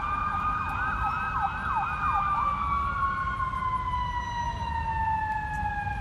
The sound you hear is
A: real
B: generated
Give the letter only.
A